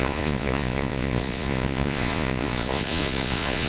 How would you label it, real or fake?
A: fake